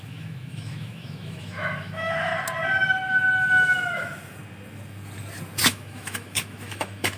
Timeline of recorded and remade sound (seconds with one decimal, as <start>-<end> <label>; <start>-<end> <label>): 0.0-2.3 remade; 2.3-5.6 recorded; 5.6-7.2 remade